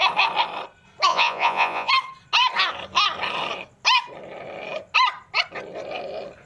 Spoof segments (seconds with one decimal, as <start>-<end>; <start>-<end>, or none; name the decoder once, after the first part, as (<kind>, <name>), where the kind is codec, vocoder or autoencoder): 1.1-1.9 (vocoder, Vocos)

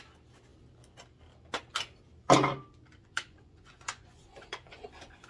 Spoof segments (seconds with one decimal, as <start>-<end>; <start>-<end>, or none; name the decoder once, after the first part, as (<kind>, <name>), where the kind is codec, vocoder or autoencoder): 3.0-5.3 (vocoder, Vocos)

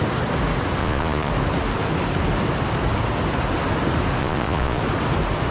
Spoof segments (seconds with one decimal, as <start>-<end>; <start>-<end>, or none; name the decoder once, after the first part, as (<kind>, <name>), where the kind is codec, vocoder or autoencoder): 0.8-1.3 (vocoder, Vocos); 4.2-4.8

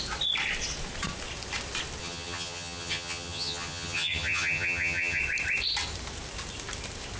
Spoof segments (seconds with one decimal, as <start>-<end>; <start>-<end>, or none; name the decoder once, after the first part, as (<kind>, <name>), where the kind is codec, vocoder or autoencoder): 2.0-5.2 (vocoder, HiFi-GAN)

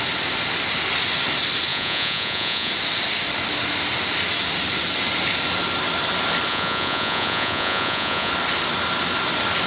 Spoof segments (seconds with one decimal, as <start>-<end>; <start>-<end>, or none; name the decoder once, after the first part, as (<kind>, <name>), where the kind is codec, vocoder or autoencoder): 1.7-2.7 (vocoder, Vocos); 6.5-8.3

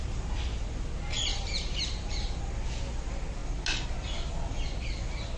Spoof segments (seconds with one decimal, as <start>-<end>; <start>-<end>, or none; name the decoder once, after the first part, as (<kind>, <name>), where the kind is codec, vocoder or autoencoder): 1.3-2.4 (vocoder, BigVGAN v2)

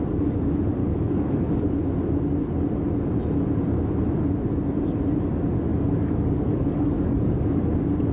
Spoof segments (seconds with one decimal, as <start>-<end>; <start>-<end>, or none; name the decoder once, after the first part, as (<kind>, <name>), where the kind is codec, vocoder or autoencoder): 0.8-1.7 (codec, DAC); 5.7-7.6

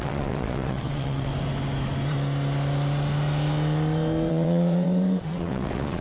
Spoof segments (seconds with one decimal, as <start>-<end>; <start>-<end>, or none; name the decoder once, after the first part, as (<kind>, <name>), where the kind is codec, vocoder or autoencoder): 0.0-1.3 (vocoder, WaveNeXt); 4.3-6.0